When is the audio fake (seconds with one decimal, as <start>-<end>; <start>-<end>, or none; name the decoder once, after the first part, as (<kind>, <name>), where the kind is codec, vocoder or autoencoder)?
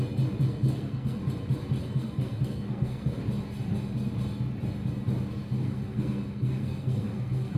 0.4-1.2 (codec, SNAC); 1.8-3.2; 5.6-7.6